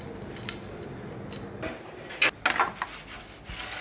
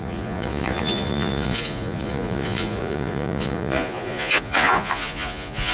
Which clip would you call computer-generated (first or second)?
second